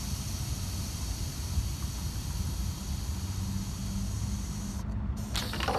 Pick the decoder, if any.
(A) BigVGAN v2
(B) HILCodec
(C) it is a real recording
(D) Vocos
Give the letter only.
C